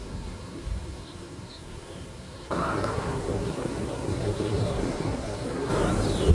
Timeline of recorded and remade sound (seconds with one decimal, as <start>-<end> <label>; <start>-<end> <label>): 0.0-5.7 remade; 5.7-6.3 recorded